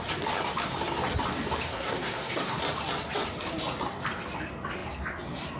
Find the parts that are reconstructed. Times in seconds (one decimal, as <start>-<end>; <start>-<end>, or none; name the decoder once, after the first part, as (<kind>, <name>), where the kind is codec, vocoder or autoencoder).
1.7-2.6 (codec, SNAC)